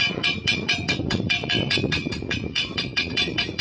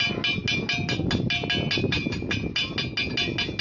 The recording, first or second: second